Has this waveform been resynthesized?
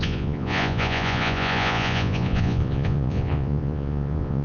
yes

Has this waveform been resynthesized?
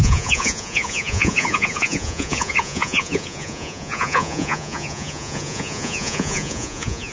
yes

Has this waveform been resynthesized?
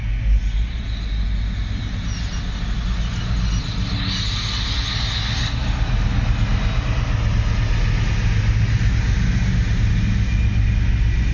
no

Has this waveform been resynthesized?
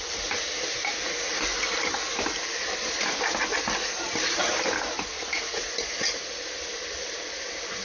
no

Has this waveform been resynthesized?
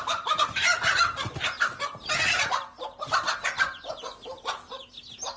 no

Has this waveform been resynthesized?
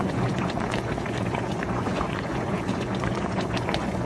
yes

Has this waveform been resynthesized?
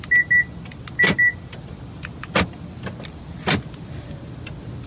no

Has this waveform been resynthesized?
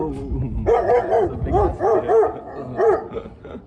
no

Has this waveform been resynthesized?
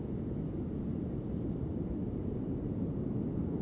no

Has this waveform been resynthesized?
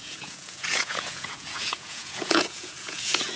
yes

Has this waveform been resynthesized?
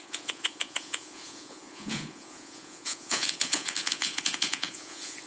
yes